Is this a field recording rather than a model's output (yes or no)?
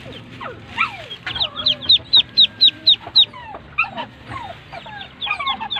yes